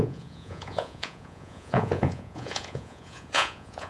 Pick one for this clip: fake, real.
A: fake